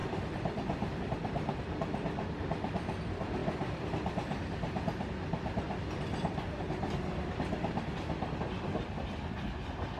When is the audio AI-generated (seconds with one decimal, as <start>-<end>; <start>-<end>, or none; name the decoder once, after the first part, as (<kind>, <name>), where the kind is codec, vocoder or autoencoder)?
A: 0.0-1.0 (vocoder, BigVGAN v2)